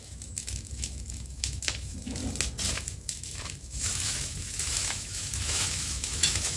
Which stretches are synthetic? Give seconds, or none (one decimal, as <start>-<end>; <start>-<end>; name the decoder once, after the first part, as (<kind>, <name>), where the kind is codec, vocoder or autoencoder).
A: 0.0-2.2 (autoencoder, DAC-VAE); 2.7-6.6